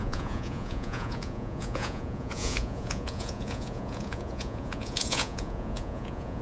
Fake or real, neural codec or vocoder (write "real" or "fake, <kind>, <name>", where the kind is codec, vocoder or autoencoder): fake, vocoder, Vocos